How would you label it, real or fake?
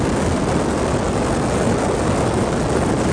real